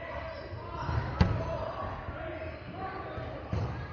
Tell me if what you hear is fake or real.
real